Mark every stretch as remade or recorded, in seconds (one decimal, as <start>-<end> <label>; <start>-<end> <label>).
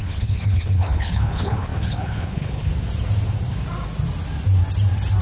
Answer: 0.0-2.7 remade; 2.7-5.2 recorded